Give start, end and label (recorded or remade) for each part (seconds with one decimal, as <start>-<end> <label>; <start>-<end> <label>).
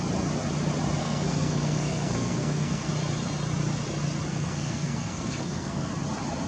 0.0-1.0 recorded; 1.0-2.9 remade; 2.9-4.3 recorded; 4.3-5.9 remade; 5.9-6.5 recorded